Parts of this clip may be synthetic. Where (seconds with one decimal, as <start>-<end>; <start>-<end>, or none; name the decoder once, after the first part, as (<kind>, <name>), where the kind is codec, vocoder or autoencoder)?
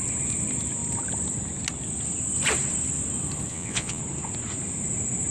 3.5-4.0 (vocoder, Vocos)